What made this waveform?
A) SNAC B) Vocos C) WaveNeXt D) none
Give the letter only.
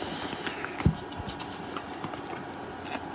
D